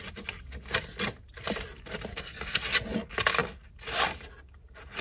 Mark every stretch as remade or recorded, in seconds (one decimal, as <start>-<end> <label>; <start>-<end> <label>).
0.0-2.1 recorded; 2.1-2.6 remade; 2.6-5.0 recorded